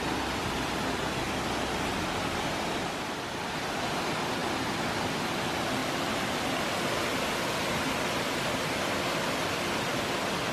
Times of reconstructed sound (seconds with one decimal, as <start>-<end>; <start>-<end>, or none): 5.8-6.6